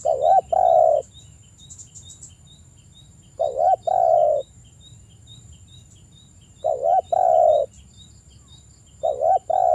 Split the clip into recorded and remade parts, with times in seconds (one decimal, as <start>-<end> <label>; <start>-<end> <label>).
0.0-9.7 recorded